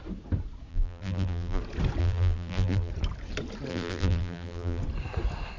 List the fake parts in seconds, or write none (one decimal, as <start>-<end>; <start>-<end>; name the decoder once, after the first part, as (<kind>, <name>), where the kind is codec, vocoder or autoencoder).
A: 0.7-1.6 (vocoder, BigVGAN v2); 2.0-2.9; 3.7-4.8